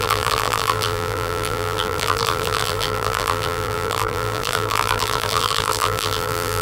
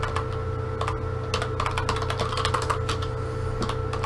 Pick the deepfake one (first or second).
first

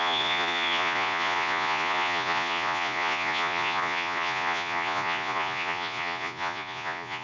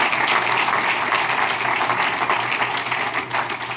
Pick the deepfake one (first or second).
first